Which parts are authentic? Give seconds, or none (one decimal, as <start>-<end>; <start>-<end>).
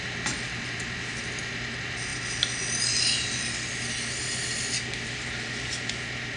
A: 0.0-6.4